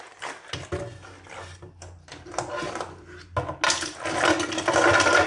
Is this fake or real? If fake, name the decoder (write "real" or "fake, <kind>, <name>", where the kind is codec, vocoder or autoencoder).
real